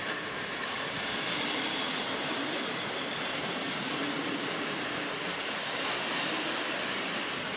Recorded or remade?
remade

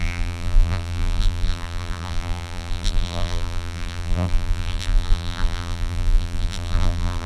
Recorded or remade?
remade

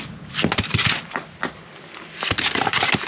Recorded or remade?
recorded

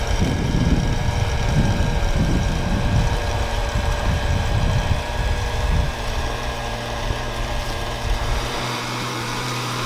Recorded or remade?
remade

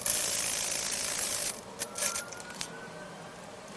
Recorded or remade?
remade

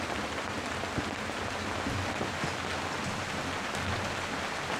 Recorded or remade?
recorded